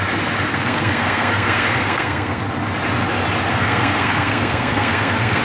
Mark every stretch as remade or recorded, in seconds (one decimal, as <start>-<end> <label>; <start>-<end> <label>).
0.0-0.5 recorded; 0.5-2.4 remade; 2.4-3.5 recorded; 3.5-5.4 remade

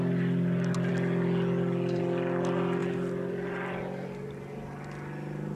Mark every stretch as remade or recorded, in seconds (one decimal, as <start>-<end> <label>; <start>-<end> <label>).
0.0-5.6 recorded

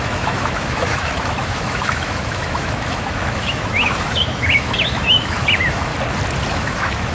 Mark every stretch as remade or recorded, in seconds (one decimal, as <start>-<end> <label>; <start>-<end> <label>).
0.0-5.9 remade; 5.9-6.5 recorded; 6.5-7.1 remade

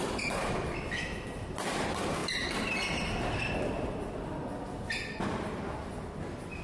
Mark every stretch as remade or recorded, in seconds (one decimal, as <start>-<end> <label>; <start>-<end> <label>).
0.0-6.6 recorded

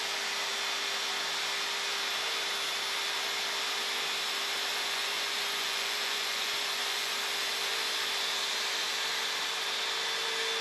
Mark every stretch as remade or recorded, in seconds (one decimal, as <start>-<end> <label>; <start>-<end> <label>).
0.0-4.7 recorded; 4.7-7.1 remade; 7.1-10.6 recorded

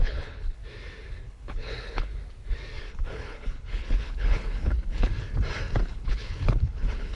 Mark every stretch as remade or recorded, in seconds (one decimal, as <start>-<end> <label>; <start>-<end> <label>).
0.0-0.6 remade; 0.6-1.2 recorded; 1.2-2.1 remade; 2.1-2.9 recorded; 2.9-5.1 remade; 5.1-5.9 recorded; 5.9-7.2 remade

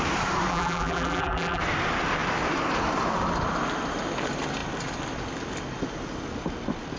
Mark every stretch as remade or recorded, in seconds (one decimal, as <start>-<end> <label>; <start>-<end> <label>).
0.0-0.5 recorded; 0.5-1.6 remade; 1.6-7.0 recorded

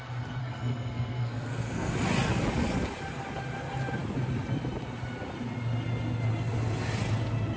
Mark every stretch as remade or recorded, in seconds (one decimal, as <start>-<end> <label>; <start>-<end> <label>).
0.0-0.4 recorded; 0.4-1.9 remade; 1.9-7.6 recorded